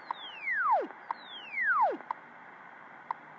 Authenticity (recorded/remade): recorded